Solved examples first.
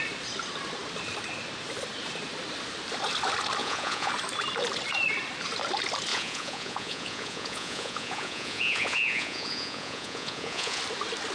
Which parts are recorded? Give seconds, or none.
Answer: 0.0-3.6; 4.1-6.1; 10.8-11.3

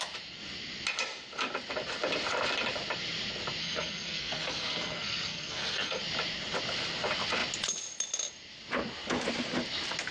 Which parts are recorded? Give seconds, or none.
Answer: 0.0-3.6; 6.0-10.1

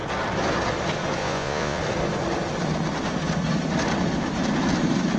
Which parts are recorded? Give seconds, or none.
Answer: 0.0-1.2; 1.8-5.2

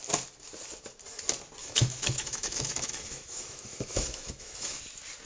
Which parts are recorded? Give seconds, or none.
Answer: 0.0-1.6; 4.8-5.3